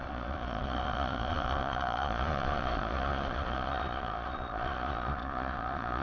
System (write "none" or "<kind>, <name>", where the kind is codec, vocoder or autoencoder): vocoder, Vocos